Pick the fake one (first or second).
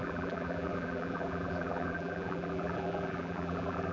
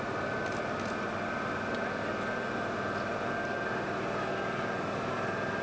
first